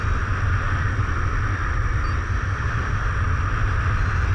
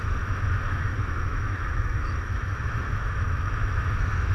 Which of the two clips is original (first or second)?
first